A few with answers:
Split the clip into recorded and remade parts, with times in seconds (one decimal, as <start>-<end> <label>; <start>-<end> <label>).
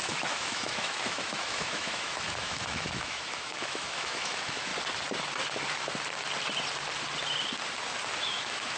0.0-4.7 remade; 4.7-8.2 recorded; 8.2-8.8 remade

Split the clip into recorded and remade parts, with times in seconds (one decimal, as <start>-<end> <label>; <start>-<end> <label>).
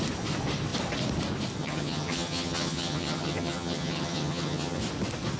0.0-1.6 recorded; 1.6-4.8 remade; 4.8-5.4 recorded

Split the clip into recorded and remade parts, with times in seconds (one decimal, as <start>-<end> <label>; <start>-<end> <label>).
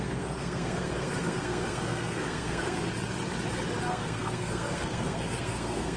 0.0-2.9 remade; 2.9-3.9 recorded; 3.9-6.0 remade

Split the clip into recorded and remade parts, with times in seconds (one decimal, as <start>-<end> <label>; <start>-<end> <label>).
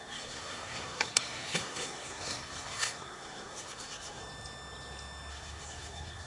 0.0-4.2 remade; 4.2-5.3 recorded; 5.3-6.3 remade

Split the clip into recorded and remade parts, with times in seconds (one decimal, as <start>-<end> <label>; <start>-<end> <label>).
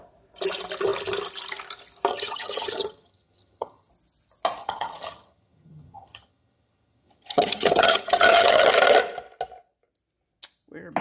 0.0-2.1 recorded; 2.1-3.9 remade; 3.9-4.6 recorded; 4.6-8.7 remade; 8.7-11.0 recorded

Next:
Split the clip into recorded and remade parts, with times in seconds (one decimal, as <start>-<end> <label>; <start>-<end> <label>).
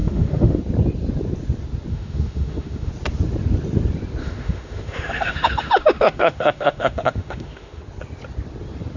0.0-0.6 remade; 0.6-1.9 recorded; 1.9-2.9 remade; 2.9-4.2 recorded; 4.2-7.8 remade; 7.8-9.0 recorded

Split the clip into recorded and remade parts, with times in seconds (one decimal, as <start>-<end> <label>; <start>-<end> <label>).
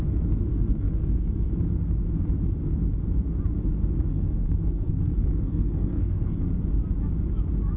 0.0-0.5 recorded; 0.5-1.5 remade; 1.5-4.1 recorded; 4.1-6.4 remade; 6.4-7.8 recorded